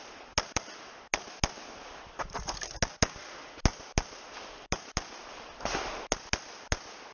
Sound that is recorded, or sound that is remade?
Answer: recorded